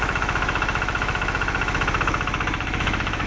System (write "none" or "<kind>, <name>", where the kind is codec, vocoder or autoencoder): autoencoder, DAC-VAE